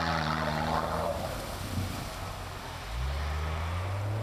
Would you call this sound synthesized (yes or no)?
no